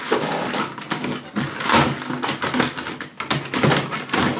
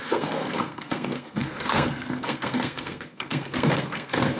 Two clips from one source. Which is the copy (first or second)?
second